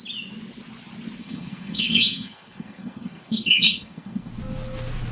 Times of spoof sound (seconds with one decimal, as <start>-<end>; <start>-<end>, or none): 1.2-4.3